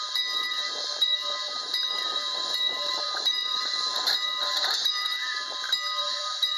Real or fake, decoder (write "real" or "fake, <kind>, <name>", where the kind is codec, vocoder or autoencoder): fake, vocoder, BigVGAN v2